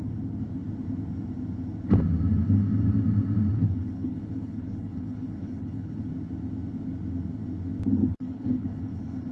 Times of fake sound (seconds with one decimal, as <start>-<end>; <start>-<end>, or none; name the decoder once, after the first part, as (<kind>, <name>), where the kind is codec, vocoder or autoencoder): 3.5-6.1 (codec, HILCodec); 8.0-9.3

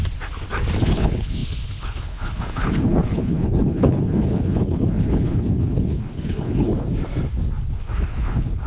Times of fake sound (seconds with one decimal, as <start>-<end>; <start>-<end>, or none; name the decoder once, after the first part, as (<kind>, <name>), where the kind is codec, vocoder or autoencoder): 0.8-6.7 (codec, HILCodec); 7.6-8.7

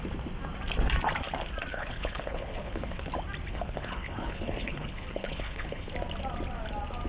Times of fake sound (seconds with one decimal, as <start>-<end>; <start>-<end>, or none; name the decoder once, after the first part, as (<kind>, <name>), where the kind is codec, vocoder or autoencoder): 1.7-3.1 (codec, HILCodec); 3.5-5.9

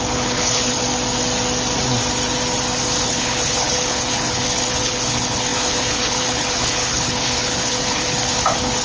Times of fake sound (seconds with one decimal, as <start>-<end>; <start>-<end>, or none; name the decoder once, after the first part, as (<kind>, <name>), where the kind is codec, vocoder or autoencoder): 0.0-0.8 (codec, HILCodec); 2.9-8.8

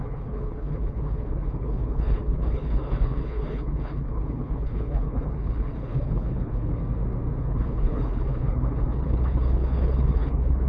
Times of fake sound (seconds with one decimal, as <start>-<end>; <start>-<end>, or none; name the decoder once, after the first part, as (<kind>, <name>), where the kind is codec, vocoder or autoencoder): 0.0-6.8 (codec, HILCodec); 7.4-10.7

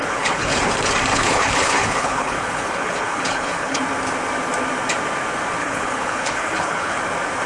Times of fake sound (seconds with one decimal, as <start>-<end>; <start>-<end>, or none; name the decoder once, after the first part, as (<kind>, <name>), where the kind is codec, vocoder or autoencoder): 0.0-0.6 (codec, HILCodec); 1.1-3.8; 5.6-7.0

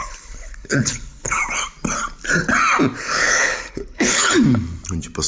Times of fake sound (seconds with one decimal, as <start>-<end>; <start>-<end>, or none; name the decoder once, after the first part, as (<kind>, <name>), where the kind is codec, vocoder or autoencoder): 0.0-1.4 (codec, HILCodec); 3.0-4.3